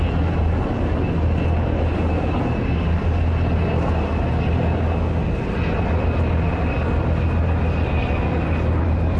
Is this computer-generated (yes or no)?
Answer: no